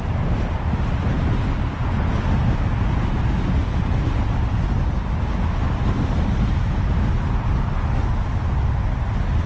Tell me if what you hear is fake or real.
real